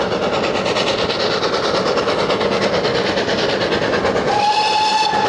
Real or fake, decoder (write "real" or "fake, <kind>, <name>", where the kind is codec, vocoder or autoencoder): real